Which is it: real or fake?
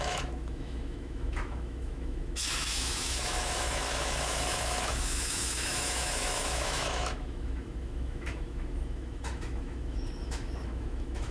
fake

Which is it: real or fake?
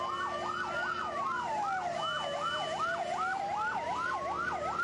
real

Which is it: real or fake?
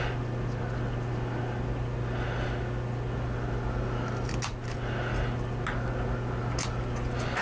real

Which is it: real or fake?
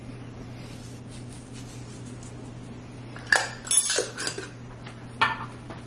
real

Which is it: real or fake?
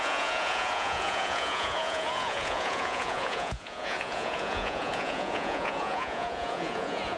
fake